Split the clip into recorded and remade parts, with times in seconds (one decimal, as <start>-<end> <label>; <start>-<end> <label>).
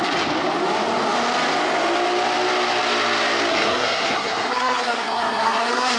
0.0-3.5 recorded; 3.5-6.0 remade